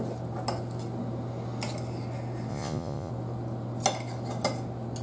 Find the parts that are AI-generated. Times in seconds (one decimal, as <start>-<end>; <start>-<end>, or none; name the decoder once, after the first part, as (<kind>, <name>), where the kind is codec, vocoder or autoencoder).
2.5-3.1 (vocoder, Vocos)